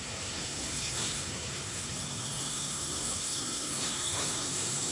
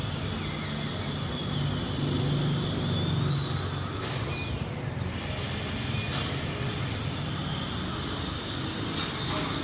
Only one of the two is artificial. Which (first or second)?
first